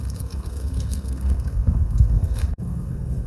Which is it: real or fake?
fake